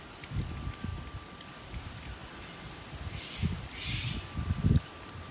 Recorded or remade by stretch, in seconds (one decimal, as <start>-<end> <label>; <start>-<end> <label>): 0.0-0.9 remade; 0.9-1.5 recorded; 1.5-5.3 remade